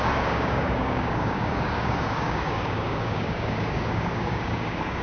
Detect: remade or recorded remade